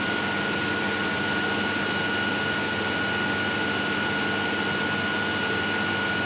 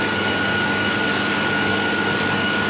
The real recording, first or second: first